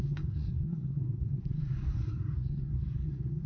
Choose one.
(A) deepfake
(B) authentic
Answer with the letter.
A